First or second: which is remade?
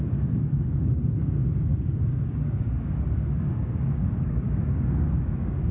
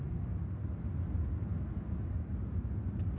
first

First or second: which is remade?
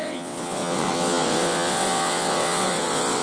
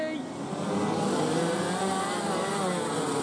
first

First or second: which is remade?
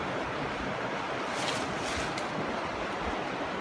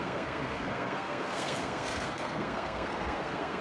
second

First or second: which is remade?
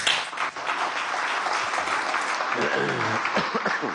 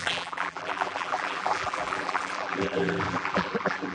second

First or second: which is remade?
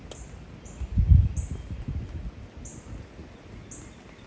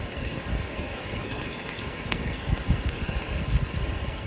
second